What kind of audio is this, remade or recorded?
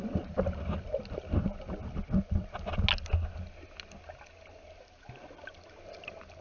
recorded